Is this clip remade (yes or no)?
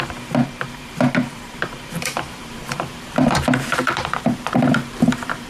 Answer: yes